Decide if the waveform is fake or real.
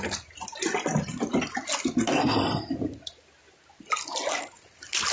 real